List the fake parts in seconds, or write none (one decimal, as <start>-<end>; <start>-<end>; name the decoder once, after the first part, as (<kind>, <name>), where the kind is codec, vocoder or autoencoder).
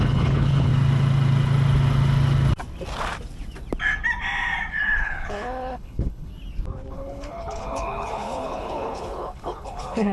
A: 0.0-0.7 (codec, HILCodec); 4.7-6.3; 6.9-10.1